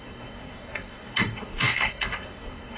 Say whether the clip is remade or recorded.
remade